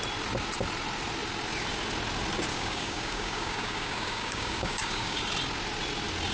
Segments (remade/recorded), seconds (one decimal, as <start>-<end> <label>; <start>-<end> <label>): 0.0-2.5 recorded; 2.5-5.2 remade; 5.2-6.3 recorded